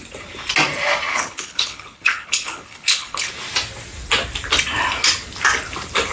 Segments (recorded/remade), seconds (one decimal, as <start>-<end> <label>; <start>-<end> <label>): 0.0-1.1 recorded; 1.1-3.3 remade; 3.3-6.1 recorded